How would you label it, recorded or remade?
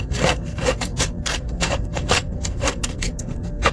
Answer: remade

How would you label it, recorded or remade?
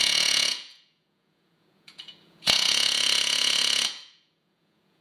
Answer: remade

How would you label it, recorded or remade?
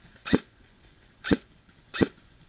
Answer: remade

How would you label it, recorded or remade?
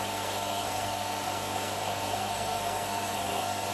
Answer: remade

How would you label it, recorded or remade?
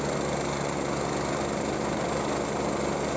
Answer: recorded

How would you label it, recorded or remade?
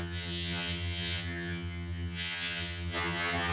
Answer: remade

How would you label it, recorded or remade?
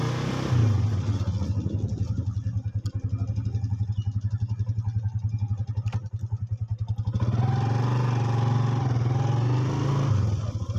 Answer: recorded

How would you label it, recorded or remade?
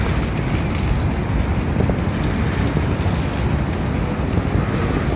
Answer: recorded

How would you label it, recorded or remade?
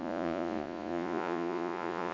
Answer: remade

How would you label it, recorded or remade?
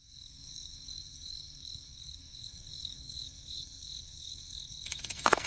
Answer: remade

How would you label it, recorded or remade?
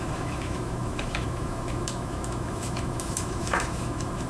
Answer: remade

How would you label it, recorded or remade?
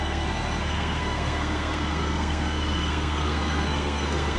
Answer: remade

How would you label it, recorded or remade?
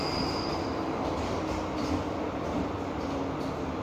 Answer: recorded